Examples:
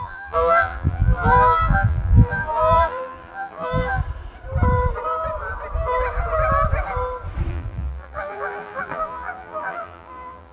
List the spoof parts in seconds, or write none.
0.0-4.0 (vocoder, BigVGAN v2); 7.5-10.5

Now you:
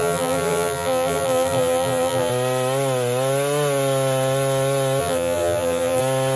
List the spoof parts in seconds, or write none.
0.0-2.3 (vocoder, BigVGAN v2); 5.0-6.0

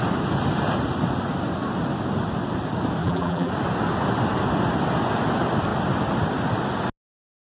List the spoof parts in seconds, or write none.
3.0-3.5 (vocoder, BigVGAN v2)

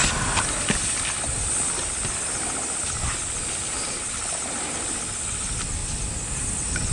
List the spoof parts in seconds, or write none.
4.1-5.8 (vocoder, BigVGAN v2); 6.5-6.9

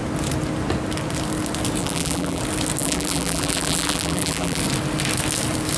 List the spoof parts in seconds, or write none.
1.8-2.4 (vocoder, BigVGAN v2); 2.8-4.6

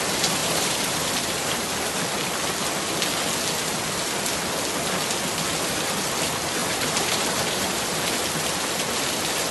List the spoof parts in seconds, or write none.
0.4-1.7 (vocoder, BigVGAN v2); 6.6-7.8

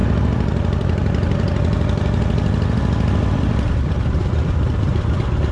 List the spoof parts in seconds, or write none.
0.0-5.5 (vocoder, BigVGAN v2)

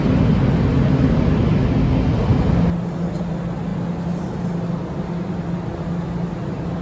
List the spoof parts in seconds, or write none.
none